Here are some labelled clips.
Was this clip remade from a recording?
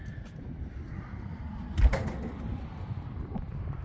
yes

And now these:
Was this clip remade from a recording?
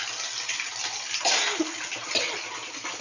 no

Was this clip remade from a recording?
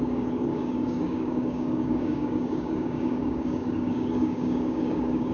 yes